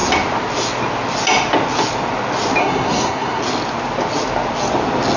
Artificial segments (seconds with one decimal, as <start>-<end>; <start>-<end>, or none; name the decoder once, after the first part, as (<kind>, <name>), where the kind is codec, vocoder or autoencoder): 2.6-3.4 (codec, SNAC)